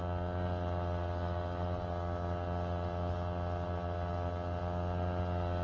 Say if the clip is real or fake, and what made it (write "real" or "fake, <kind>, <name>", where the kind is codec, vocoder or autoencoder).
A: real